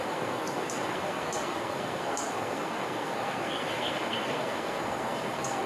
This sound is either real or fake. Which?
fake